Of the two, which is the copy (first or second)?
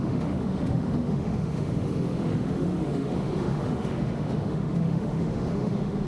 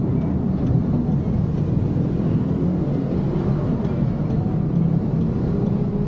first